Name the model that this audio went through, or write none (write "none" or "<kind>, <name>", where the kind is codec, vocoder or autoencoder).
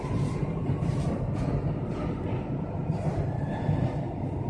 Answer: none